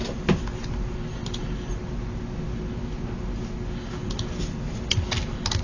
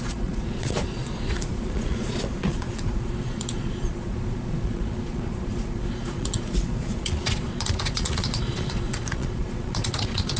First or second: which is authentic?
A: first